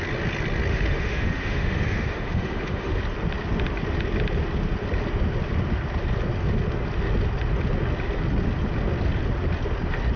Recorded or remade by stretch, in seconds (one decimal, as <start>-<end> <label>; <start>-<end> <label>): 0.0-0.7 recorded; 0.7-3.0 remade; 3.0-10.2 recorded